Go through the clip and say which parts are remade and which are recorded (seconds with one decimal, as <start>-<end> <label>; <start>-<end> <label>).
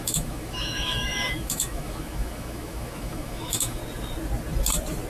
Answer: 0.0-3.8 remade; 3.8-5.1 recorded